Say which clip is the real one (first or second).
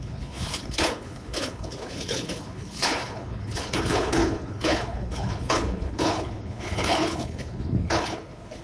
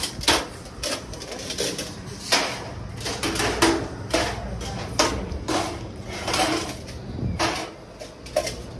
second